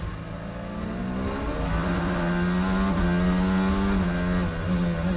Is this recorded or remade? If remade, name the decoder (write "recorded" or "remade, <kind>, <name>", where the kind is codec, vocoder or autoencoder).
recorded